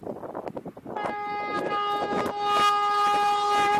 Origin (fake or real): real